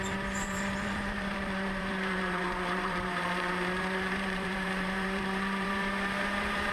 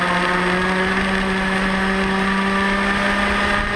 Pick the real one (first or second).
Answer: second